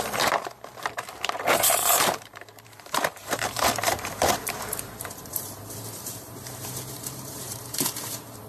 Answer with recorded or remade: remade